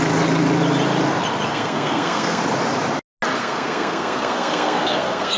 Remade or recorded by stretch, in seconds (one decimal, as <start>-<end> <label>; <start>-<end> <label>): 0.0-1.5 recorded; 1.5-2.4 remade; 2.4-3.4 recorded; 3.4-5.4 remade